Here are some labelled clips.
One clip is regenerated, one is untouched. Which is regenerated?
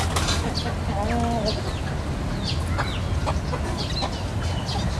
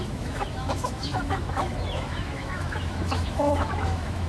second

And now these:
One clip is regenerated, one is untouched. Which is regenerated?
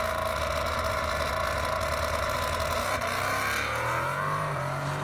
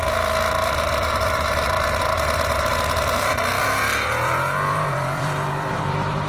second